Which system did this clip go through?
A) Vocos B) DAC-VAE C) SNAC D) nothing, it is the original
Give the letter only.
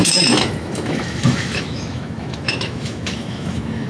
B